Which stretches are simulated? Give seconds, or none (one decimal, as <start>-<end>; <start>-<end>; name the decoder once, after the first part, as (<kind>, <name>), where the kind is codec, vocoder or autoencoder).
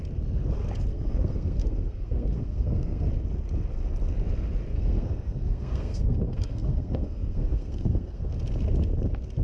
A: 0.9-3.1 (codec, SNAC); 4.7-8.3